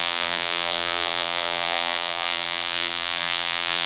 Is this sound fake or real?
fake